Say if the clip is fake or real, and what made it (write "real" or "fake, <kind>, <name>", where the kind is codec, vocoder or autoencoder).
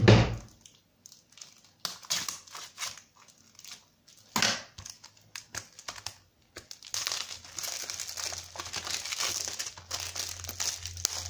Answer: real